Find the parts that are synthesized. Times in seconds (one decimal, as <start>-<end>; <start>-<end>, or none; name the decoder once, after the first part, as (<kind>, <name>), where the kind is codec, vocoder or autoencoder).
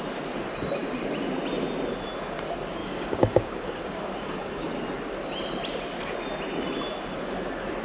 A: 2.8-4.7 (codec, DAC)